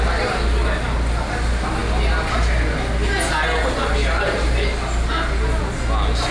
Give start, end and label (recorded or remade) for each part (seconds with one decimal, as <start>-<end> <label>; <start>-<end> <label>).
0.0-6.3 recorded